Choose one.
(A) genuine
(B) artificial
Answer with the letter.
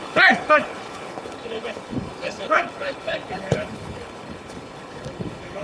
B